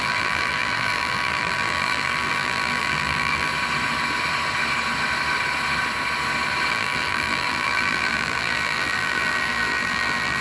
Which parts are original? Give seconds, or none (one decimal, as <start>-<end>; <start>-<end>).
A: 3.5-6.7